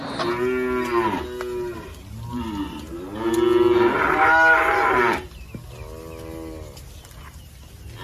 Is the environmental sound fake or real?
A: real